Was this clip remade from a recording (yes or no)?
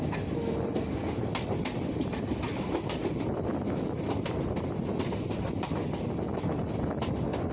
no